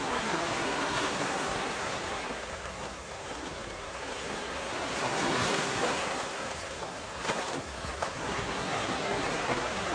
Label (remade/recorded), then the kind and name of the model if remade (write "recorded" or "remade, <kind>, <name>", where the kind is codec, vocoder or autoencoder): remade, codec, SNAC